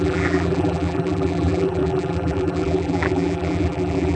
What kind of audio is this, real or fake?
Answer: fake